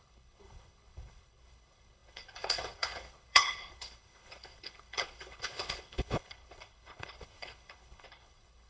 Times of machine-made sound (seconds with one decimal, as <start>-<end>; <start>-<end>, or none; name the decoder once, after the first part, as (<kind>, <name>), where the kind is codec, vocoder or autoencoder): 0.0-8.7 (codec, HILCodec)